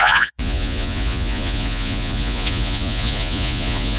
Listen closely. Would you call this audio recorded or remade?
remade